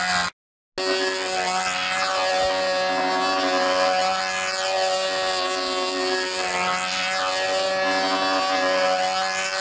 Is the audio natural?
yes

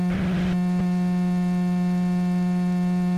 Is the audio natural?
yes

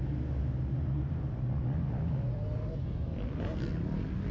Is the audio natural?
yes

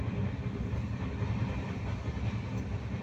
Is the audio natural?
yes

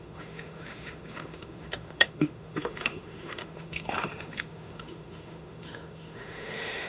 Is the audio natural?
no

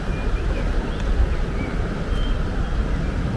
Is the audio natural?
yes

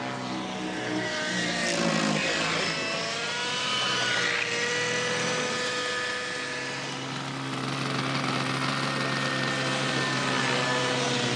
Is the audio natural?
yes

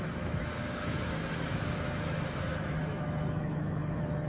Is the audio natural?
no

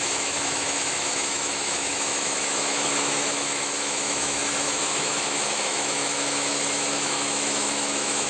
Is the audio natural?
no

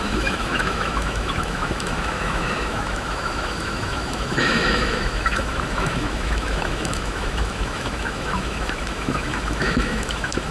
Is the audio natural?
no